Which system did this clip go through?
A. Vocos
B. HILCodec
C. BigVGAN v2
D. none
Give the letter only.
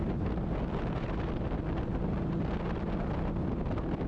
D